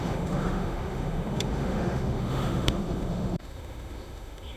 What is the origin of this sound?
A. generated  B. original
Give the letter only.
A